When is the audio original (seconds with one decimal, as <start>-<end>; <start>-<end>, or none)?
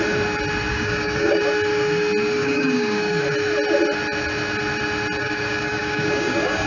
0.0-0.7; 1.4-2.4; 3.2-5.2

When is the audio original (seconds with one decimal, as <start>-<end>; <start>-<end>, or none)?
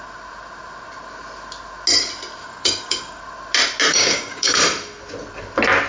0.0-2.4; 3.2-3.9; 4.6-5.9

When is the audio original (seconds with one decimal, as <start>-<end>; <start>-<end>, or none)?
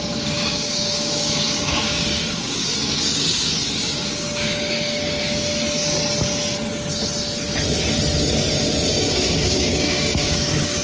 5.5-8.9